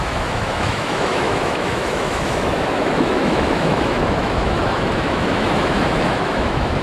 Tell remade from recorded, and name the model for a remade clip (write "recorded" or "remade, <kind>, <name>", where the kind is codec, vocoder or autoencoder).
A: remade, autoencoder, DAC-VAE